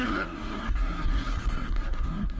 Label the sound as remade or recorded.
remade